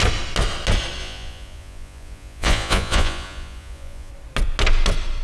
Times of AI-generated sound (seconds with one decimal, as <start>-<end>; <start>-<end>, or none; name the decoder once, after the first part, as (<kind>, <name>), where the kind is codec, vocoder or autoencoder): 1.0-4.1 (vocoder, Vocos)